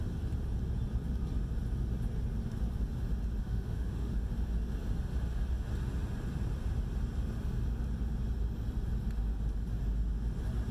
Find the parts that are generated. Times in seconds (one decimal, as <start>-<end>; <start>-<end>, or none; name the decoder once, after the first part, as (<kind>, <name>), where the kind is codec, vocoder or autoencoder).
3.4-4.3 (autoencoder, DAC-VAE)